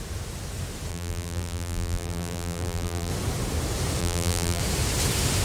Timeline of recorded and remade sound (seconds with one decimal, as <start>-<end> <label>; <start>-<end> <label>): 0.0-0.9 recorded; 0.9-3.1 remade; 3.1-4.0 recorded; 4.0-4.6 remade; 4.6-5.4 recorded